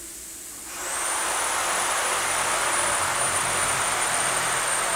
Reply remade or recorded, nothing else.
recorded